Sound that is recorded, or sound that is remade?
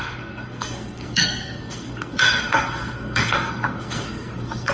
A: remade